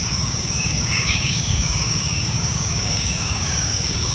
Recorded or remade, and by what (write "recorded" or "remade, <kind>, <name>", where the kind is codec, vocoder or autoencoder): remade, codec, DAC